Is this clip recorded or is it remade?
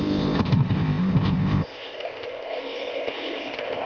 remade